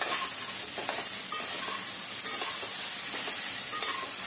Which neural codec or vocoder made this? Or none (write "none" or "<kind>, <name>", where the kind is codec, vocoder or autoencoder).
none